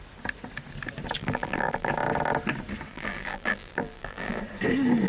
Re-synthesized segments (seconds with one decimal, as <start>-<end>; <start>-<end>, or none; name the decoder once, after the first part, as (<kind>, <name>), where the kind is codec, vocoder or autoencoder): 1.2-1.9 (vocoder, BigVGAN v2); 2.9-4.4